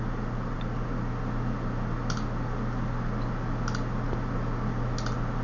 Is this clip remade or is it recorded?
recorded